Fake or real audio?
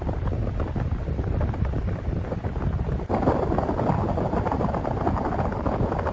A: real